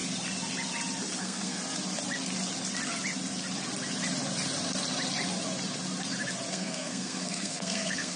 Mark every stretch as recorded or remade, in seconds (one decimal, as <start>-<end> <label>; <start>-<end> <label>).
0.0-1.2 recorded; 1.2-1.6 remade; 1.6-6.5 recorded; 6.5-8.2 remade